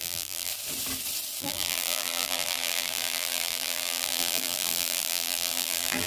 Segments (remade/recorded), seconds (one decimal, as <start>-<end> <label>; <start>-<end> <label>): 0.0-0.5 remade; 0.5-1.4 recorded; 1.4-6.1 remade